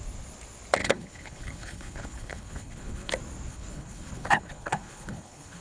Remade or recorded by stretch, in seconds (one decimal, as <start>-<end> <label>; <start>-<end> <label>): 0.0-0.8 recorded; 0.8-3.1 remade; 3.1-3.5 recorded; 3.5-5.6 remade